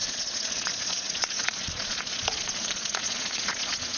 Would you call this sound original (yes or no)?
no